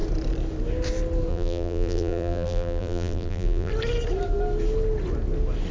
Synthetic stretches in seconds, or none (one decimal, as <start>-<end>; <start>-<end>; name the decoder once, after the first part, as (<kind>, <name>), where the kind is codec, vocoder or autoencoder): 1.3-3.7 (vocoder, BigVGAN v2)